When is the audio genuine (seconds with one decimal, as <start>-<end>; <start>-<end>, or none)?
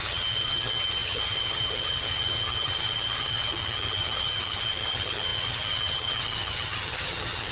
none